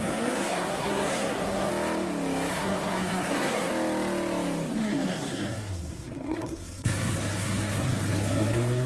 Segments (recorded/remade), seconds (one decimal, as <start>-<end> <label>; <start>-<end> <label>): 0.0-1.7 remade; 1.7-2.5 recorded; 2.5-3.7 remade; 3.7-4.7 recorded; 4.7-8.9 remade